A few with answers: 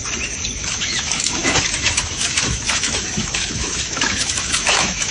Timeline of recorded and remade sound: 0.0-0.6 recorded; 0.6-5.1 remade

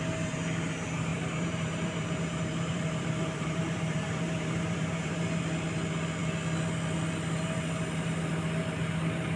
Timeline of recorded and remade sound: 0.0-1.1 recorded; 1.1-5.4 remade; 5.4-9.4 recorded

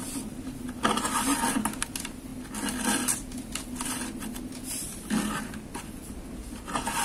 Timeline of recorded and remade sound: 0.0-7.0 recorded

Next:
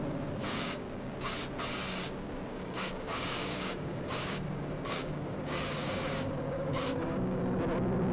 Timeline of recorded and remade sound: 0.0-0.4 recorded; 0.4-1.1 remade; 1.1-2.5 recorded; 2.5-7.4 remade; 7.4-8.1 recorded

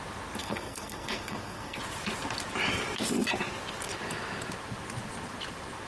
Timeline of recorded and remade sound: 0.0-0.4 recorded; 0.4-1.8 remade; 1.8-5.9 recorded

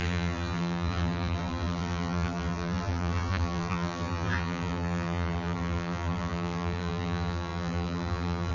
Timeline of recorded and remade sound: 0.0-8.5 remade

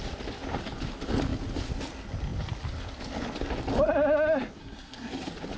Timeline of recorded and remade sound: 0.0-4.6 recorded; 4.6-5.1 remade; 5.1-5.6 recorded